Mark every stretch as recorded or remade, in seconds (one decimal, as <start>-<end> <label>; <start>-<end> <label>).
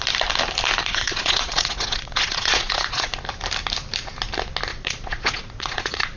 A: 0.0-0.8 recorded; 0.8-3.2 remade; 3.2-4.7 recorded; 4.7-6.2 remade